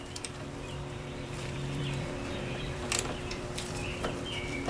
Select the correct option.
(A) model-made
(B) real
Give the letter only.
A